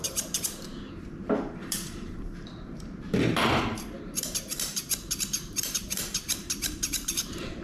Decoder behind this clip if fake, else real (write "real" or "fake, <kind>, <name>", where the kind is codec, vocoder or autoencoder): fake, vocoder, BigVGAN v2